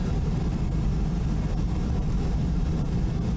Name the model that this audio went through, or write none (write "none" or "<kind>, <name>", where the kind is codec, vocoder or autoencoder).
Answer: none